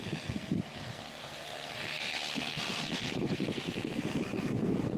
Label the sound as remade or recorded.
remade